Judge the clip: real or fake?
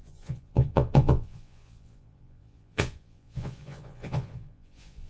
fake